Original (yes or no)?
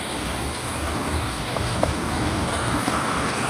no